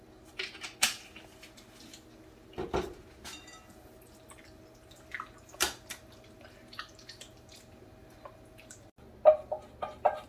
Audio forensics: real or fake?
real